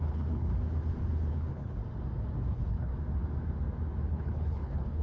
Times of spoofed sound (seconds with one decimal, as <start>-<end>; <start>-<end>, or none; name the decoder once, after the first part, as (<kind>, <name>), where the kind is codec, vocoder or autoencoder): 0.0-0.5 (codec, HILCodec); 1.3-1.8; 2.5-2.9; 4.1-5.0